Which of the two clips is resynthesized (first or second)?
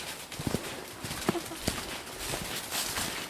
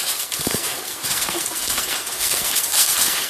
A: second